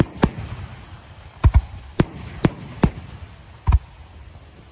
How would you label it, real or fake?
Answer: real